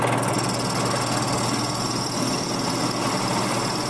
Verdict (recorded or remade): recorded